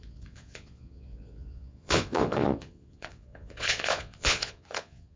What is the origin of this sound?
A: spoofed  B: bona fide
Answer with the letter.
A